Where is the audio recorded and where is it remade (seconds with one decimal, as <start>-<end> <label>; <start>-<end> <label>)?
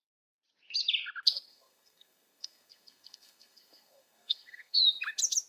0.0-1.5 recorded; 1.5-4.8 remade; 4.8-5.5 recorded